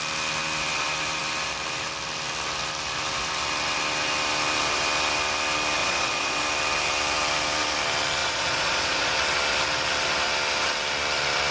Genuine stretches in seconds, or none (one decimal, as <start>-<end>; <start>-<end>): 0.0-5.8; 6.4-8.2; 9.1-11.5